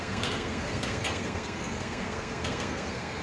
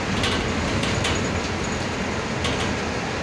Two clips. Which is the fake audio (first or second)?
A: first